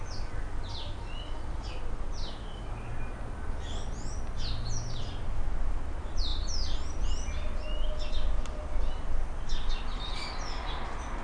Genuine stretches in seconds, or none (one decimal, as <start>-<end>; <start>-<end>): 0.0-11.2